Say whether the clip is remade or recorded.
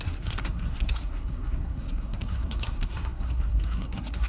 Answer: remade